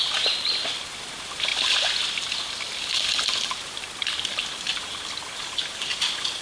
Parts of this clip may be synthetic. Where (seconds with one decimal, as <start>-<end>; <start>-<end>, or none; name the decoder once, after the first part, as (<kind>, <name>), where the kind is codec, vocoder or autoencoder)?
4.7-5.6 (vocoder, BigVGAN v2)